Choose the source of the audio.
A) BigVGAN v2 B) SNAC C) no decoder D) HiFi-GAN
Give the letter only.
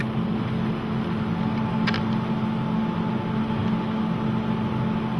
C